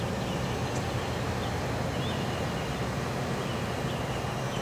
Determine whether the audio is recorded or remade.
recorded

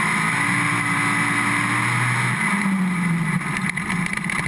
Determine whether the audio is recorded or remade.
recorded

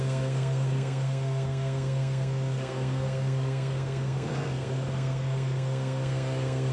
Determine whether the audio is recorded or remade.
remade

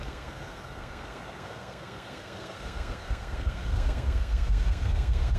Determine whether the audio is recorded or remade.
remade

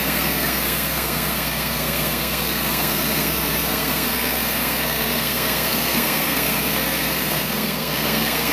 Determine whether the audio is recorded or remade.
remade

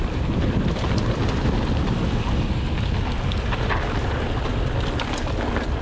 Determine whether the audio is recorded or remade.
recorded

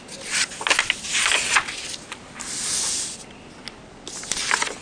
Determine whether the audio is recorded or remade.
recorded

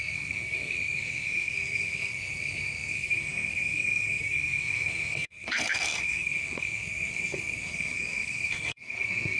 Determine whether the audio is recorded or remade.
remade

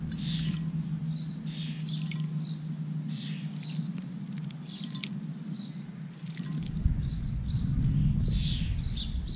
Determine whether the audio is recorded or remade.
recorded